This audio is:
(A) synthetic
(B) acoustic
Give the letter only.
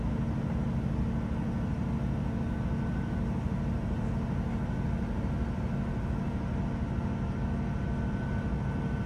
B